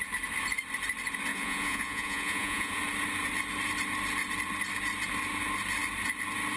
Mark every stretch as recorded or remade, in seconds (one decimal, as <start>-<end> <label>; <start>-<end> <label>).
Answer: 0.0-1.3 recorded; 1.3-2.8 remade; 2.8-6.6 recorded